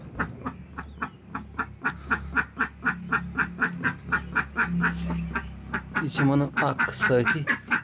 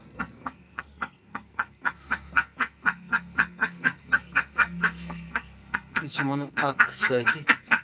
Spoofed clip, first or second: second